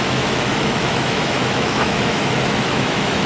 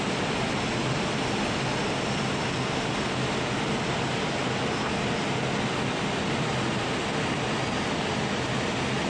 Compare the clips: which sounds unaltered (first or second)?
second